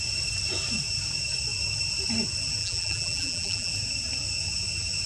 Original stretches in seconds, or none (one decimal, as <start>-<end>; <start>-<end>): 0.0-2.6; 3.7-5.1

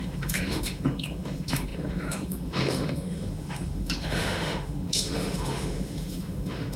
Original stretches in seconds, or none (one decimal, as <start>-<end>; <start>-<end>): none

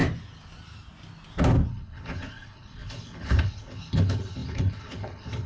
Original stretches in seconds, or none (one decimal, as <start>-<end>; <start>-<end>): 0.0-1.7

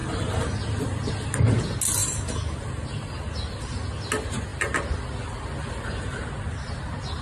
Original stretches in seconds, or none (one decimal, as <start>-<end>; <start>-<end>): 1.1-2.0; 3.1-7.2

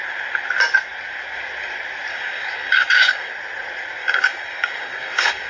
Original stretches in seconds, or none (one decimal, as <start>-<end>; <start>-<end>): 0.0-2.1; 3.3-4.0

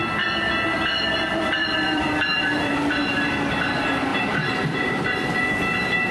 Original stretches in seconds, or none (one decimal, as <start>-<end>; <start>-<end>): 2.9-4.1; 5.5-6.1

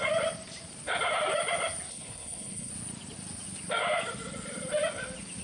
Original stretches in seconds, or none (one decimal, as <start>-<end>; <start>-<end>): 0.0-1.9; 2.7-5.4

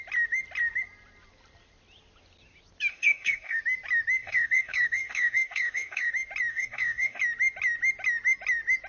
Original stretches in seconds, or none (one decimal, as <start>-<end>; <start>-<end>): 0.0-2.9; 3.6-4.2; 6.1-6.5; 7.2-8.9